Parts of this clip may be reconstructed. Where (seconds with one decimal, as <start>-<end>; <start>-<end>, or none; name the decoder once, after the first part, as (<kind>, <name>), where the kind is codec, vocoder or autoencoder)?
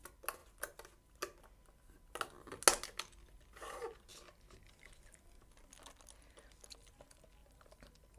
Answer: 4.1-5.4 (vocoder, BigVGAN v2); 7.4-8.2